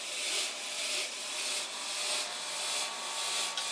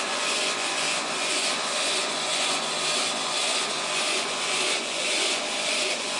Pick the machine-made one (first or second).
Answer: second